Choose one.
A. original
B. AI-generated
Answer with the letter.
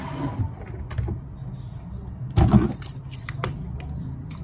A